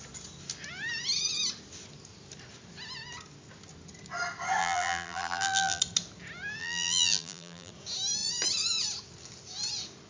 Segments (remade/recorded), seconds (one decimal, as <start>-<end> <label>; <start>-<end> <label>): 0.0-4.6 recorded; 4.6-5.8 remade; 5.8-6.6 recorded; 6.6-7.7 remade; 7.7-10.1 recorded